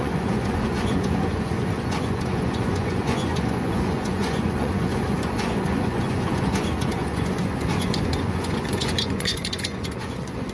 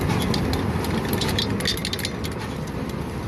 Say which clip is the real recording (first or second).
second